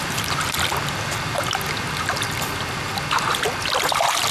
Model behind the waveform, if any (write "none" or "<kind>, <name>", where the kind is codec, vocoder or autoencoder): none